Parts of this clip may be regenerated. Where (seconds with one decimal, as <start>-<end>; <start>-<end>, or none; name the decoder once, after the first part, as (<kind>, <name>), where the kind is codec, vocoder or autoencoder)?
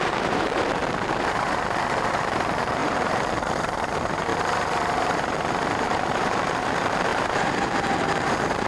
0.0-0.8 (vocoder, BigVGAN v2); 1.9-8.7